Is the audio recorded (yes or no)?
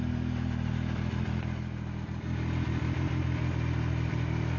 yes